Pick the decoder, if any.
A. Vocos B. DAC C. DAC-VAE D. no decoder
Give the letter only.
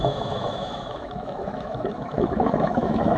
C